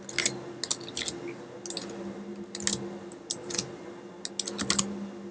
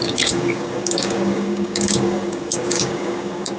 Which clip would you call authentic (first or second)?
first